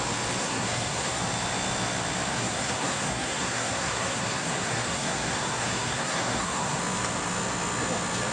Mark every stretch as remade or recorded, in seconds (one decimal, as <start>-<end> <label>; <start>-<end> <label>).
0.0-0.4 recorded; 0.4-1.2 remade; 1.2-2.3 recorded; 2.3-6.8 remade; 6.8-8.3 recorded